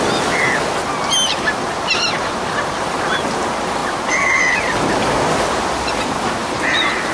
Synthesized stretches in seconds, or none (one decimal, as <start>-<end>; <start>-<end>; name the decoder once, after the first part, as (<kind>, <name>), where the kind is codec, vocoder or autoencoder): 6.4-7.1 (vocoder, BigVGAN v2)